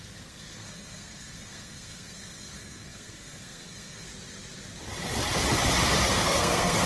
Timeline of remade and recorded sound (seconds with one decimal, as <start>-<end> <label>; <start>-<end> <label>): 0.0-4.1 remade; 4.1-6.1 recorded; 6.1-6.9 remade